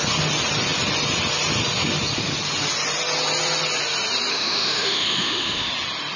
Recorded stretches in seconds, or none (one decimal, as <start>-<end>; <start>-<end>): 0.0-4.3; 5.7-6.2